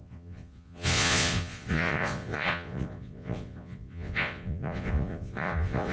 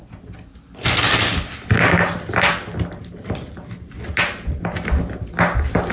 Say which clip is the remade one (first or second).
first